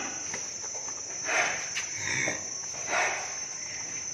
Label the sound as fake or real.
real